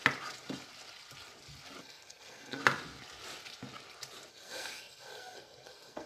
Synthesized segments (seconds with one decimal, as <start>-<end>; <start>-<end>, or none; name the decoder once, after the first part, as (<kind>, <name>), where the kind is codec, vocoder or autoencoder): 1.8-2.6 (codec, SNAC); 4.3-6.1